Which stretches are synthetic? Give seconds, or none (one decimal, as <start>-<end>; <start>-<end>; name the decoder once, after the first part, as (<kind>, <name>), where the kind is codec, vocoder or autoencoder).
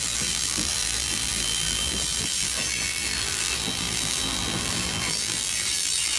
0.0-6.2 (vocoder, BigVGAN v2)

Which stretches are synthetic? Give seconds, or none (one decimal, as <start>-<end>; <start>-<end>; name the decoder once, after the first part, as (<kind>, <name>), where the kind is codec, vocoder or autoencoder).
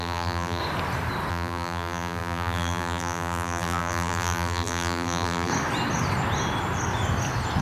0.0-0.6 (vocoder, BigVGAN v2); 1.3-5.5